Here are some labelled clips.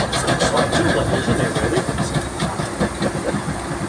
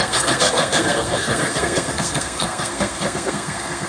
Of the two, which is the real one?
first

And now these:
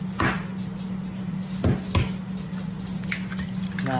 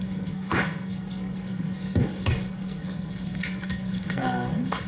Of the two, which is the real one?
first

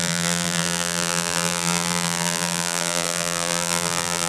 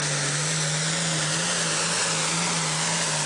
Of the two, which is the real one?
second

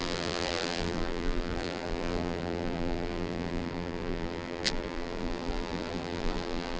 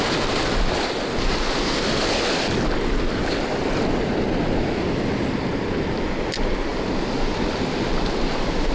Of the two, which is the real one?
second